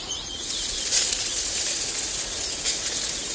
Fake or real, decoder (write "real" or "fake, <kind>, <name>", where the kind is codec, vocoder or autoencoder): fake, vocoder, Vocos